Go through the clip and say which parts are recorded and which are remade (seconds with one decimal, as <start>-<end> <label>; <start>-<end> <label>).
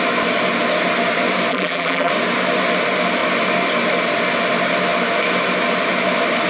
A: 0.0-1.5 recorded; 1.5-2.1 remade; 2.1-6.5 recorded